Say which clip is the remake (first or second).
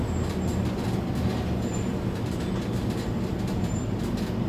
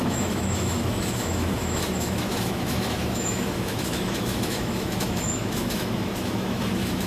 second